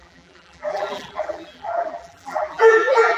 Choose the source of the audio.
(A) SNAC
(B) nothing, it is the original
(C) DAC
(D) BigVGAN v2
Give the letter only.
D